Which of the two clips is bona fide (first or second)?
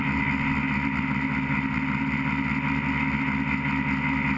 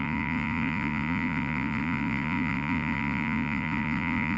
first